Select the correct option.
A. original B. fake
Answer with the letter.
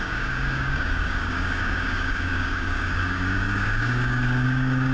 B